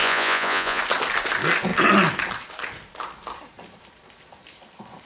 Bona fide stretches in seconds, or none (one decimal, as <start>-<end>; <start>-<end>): 0.8-5.1

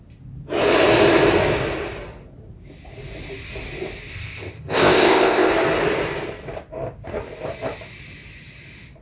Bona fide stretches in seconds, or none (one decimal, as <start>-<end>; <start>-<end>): 0.0-4.1; 5.5-9.0